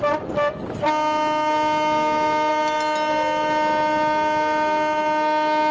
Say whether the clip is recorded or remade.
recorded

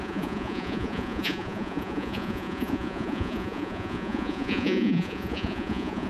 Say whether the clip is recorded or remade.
remade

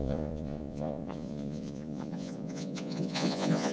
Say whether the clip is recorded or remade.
remade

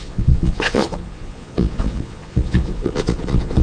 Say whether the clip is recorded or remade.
remade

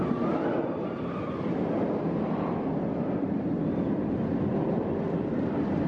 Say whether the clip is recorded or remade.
recorded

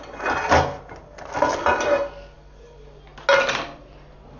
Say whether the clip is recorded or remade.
recorded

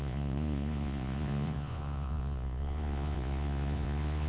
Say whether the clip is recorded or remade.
remade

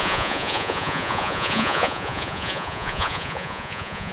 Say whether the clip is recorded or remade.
remade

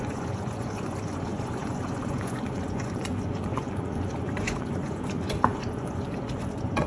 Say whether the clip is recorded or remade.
remade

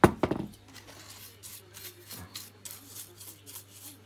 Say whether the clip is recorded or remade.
recorded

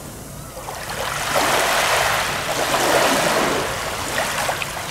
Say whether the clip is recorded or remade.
recorded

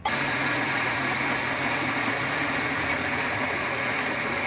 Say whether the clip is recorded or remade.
remade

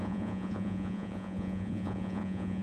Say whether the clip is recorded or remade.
remade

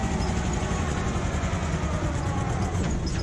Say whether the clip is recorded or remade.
remade